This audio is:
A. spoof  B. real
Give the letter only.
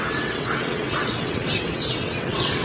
A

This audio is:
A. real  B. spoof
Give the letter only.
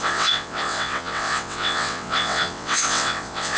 B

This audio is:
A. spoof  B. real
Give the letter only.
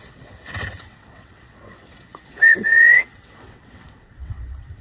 A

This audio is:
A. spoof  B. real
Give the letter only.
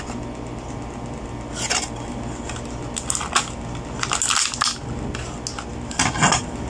B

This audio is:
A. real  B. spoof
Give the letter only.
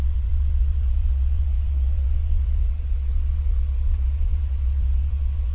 B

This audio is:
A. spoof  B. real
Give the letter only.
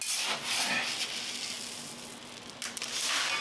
B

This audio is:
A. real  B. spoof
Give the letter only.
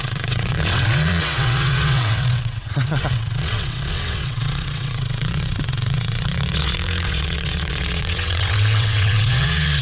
B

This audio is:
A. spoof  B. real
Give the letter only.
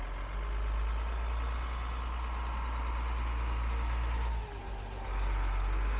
B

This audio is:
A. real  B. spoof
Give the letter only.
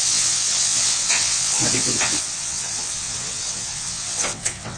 B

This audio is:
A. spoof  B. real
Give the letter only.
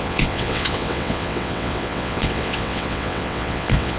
A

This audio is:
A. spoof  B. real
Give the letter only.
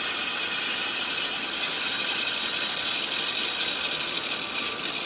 B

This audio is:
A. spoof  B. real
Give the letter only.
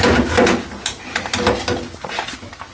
B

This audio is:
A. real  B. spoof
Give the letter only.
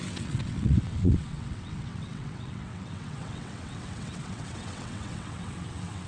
B